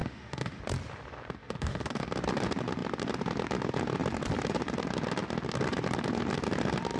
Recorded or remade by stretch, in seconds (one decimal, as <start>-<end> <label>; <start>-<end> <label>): 0.0-0.6 remade; 0.6-1.4 recorded; 1.4-2.1 remade; 2.1-7.0 recorded